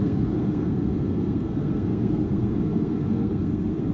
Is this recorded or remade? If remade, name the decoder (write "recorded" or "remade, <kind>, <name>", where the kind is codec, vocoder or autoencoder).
remade, codec, SNAC